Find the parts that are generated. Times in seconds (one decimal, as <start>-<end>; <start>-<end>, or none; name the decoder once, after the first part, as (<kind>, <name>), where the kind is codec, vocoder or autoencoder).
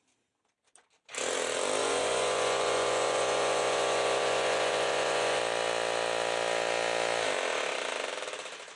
1.8-5.4 (vocoder, Vocos)